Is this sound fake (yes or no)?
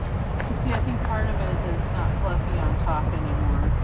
no